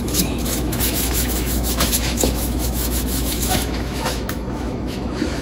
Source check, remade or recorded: remade